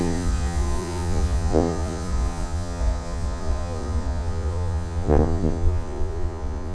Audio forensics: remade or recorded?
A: remade